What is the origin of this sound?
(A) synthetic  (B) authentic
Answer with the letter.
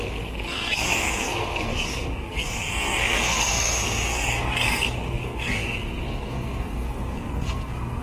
A